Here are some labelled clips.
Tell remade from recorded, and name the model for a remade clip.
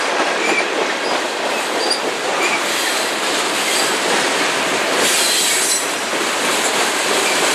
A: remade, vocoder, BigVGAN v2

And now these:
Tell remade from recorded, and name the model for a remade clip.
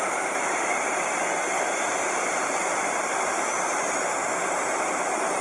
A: remade, vocoder, BigVGAN v2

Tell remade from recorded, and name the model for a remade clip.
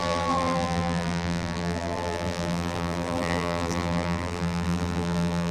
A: remade, vocoder, BigVGAN v2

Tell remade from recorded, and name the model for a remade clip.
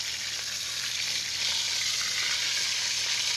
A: recorded